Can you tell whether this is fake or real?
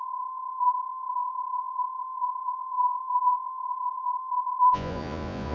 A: fake